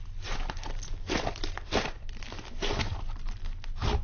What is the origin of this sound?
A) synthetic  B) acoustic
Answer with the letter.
B